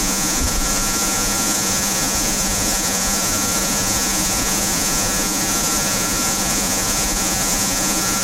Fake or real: fake